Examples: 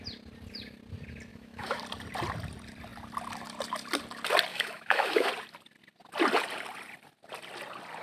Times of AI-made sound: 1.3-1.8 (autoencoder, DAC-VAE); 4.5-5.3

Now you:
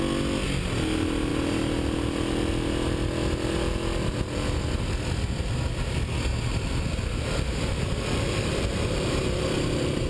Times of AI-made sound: none

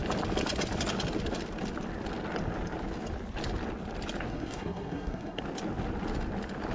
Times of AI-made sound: 4.3-5.4 (codec, SNAC)

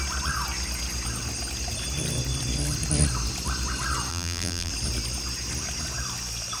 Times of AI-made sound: 4.1-4.7 (vocoder, BigVGAN v2)

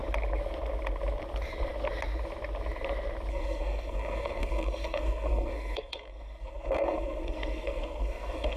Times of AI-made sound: 3.3-8.6 (codec, SNAC)

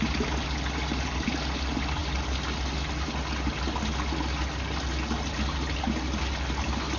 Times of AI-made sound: none